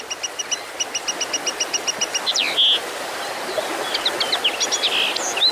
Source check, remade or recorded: recorded